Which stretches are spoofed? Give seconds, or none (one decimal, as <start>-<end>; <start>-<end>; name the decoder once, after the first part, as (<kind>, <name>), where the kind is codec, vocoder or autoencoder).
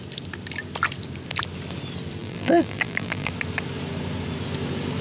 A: 2.2-3.3 (vocoder, BigVGAN v2)